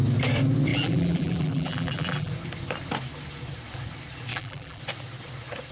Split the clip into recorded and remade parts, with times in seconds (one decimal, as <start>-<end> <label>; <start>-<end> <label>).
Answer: 0.0-0.7 recorded; 0.7-2.3 remade; 2.3-4.3 recorded; 4.3-4.8 remade; 4.8-5.7 recorded